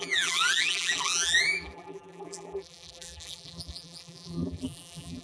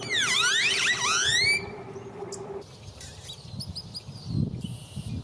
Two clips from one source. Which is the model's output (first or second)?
first